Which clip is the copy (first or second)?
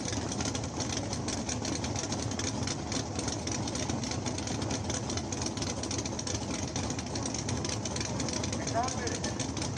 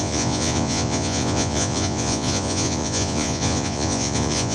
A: second